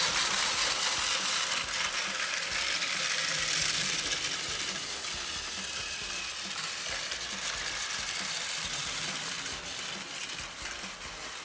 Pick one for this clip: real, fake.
real